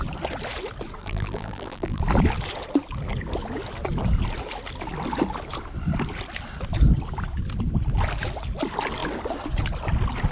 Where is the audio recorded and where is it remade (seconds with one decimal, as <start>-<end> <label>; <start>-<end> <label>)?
0.0-1.0 recorded; 1.0-2.0 remade; 2.0-10.3 recorded

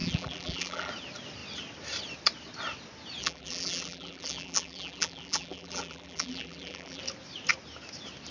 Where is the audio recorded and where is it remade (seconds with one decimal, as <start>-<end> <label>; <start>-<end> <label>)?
0.0-0.9 remade; 0.9-3.2 recorded; 3.2-7.0 remade; 7.0-8.3 recorded

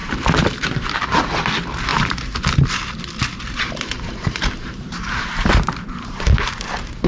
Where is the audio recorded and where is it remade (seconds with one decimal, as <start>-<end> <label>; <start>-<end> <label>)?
0.0-1.2 remade; 1.2-1.9 recorded; 1.9-6.2 remade; 6.2-7.1 recorded

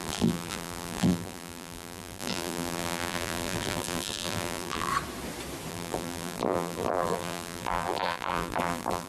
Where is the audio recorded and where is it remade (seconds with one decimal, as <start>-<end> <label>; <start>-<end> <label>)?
0.0-4.9 remade; 4.9-5.7 recorded; 5.7-9.1 remade

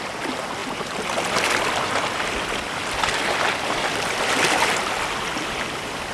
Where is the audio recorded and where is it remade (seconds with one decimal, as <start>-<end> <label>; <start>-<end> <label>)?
0.0-6.1 recorded